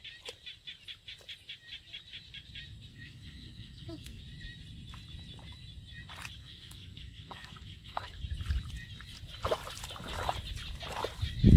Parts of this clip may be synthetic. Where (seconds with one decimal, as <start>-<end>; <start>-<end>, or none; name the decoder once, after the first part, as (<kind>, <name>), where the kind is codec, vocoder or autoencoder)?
2.9-4.2 (codec, SNAC); 6.4-8.2